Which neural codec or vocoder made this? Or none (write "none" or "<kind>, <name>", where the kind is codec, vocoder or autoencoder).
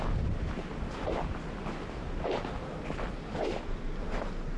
none